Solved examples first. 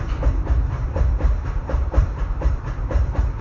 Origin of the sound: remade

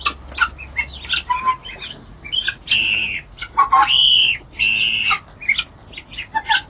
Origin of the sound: recorded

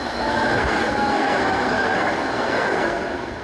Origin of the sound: remade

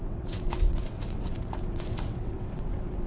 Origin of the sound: remade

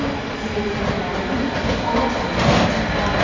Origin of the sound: recorded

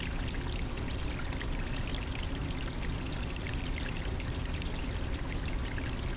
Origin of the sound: recorded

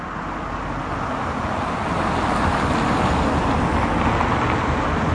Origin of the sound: recorded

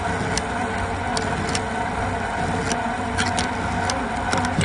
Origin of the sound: recorded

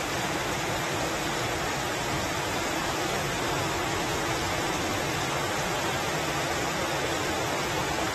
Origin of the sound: recorded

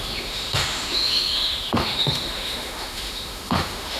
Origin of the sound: remade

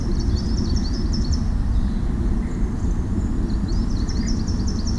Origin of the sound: recorded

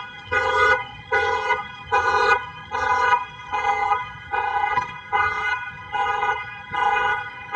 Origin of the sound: remade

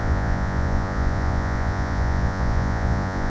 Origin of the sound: remade